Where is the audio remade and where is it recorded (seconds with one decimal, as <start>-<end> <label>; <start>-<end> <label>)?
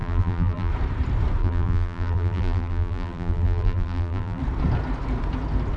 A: 0.0-0.7 remade; 0.7-1.4 recorded; 1.4-4.4 remade; 4.4-5.8 recorded